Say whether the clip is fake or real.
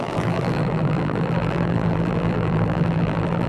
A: fake